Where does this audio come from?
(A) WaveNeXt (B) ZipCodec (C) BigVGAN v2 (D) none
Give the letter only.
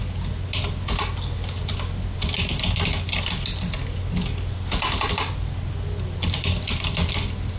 D